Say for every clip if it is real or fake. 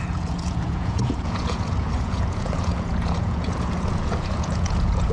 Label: fake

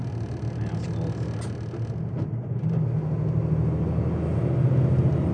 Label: real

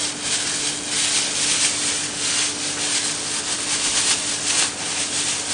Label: real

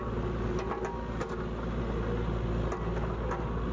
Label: real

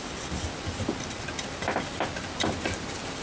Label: real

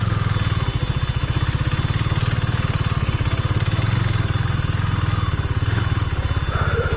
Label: real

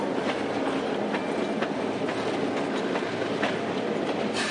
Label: real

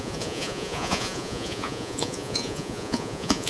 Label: fake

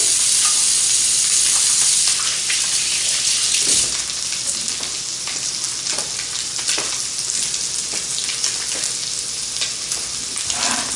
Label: real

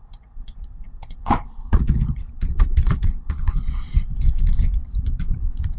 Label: fake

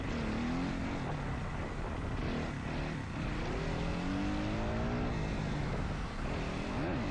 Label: real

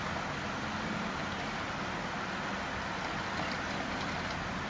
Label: real